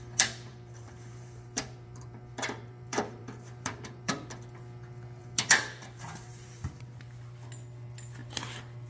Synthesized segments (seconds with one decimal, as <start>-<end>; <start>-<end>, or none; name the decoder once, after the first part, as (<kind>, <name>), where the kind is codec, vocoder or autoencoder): 0.5-4.1 (vocoder, BigVGAN v2); 5.2-7.0

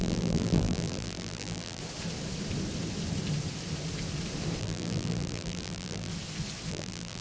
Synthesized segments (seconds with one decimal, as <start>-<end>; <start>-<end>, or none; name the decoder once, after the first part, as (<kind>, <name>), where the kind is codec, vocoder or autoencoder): 0.0-1.8 (vocoder, BigVGAN v2); 4.6-6.1; 6.7-7.2

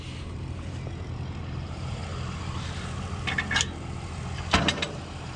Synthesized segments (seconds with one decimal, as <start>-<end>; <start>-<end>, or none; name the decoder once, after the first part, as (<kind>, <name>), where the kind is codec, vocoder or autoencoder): 0.0-2.0 (vocoder, BigVGAN v2); 4.6-5.4

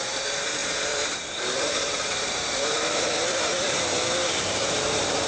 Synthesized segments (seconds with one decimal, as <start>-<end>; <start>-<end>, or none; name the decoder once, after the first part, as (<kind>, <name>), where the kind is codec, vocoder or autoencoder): 0.6-3.8 (vocoder, BigVGAN v2); 4.2-5.3

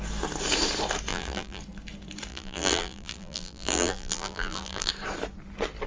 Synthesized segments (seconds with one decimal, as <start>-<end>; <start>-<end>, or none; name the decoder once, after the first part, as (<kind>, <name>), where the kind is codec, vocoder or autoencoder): 1.1-1.6 (vocoder, BigVGAN v2); 2.3-4.9